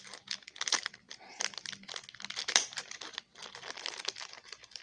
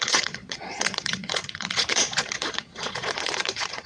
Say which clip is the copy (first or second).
second